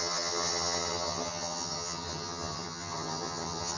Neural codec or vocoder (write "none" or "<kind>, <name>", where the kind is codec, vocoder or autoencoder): vocoder, HiFi-GAN